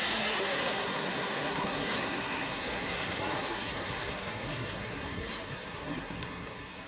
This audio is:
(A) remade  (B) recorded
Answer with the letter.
A